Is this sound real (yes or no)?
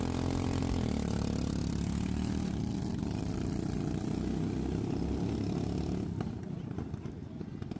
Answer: no